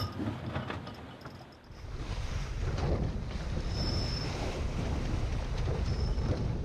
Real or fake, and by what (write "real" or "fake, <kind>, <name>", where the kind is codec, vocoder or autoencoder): real